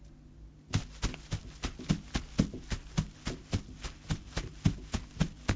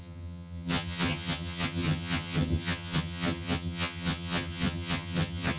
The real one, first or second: first